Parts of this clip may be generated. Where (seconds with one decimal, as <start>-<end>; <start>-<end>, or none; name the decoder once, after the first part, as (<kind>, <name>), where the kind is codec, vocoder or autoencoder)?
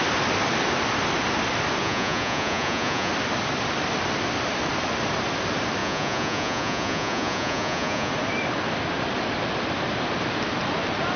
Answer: 1.8-3.1 (vocoder, Vocos); 5.8-8.1